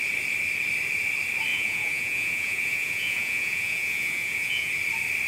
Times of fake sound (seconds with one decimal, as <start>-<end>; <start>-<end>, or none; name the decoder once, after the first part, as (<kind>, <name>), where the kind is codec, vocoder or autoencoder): 1.5-4.7 (vocoder, Vocos)